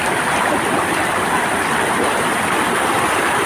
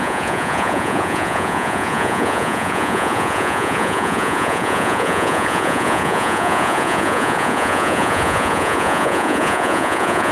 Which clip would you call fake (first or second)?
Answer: second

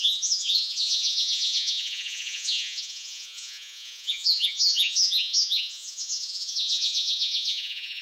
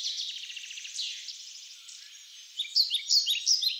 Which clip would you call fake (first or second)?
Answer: first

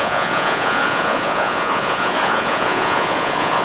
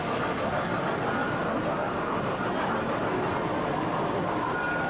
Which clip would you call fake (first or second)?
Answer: first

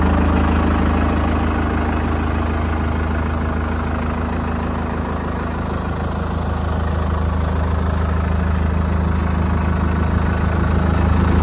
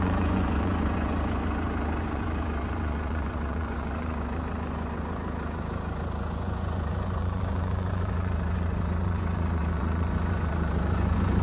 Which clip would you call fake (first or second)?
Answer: second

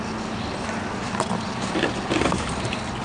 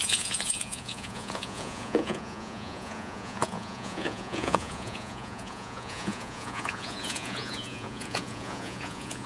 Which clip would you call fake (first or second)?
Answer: second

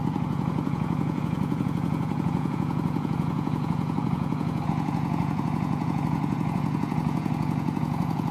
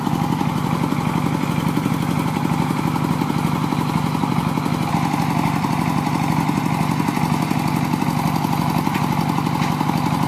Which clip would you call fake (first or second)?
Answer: first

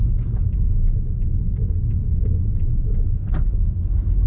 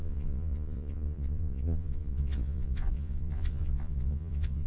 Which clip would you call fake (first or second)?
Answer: second